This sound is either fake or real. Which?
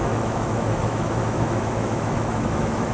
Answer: fake